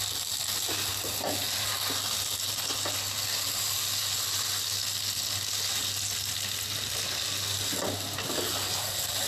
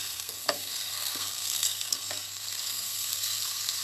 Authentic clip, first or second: first